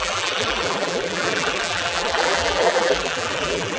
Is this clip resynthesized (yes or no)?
yes